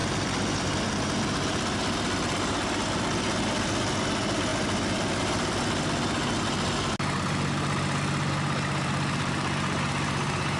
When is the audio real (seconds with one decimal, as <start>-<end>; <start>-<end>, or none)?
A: 0.0-10.6

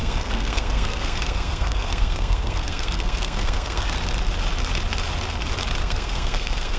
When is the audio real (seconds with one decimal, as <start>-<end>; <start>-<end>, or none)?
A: 3.9-5.8

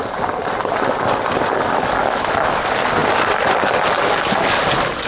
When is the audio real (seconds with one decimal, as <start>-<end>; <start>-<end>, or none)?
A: 0.0-2.0; 2.6-5.1

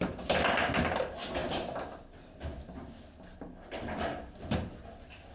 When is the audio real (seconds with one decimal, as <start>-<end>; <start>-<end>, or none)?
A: 0.0-5.3

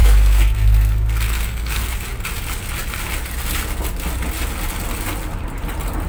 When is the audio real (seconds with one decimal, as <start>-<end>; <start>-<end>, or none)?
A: 2.0-6.1

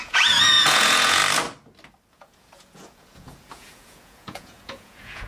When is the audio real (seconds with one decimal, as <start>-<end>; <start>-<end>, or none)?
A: 1.2-2.1